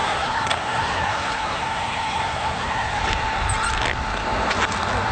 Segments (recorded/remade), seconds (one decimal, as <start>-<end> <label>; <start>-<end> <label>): 0.0-3.0 remade; 3.0-5.1 recorded